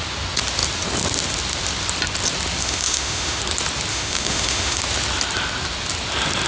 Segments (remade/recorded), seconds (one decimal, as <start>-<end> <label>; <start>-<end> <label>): 0.0-2.6 recorded; 2.6-3.4 remade; 3.4-3.9 recorded; 3.9-4.8 remade; 4.8-6.5 recorded